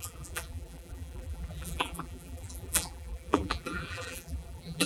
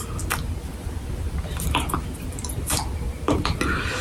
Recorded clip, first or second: second